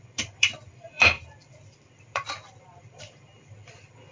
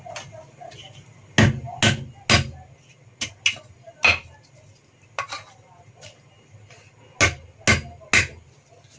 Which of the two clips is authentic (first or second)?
second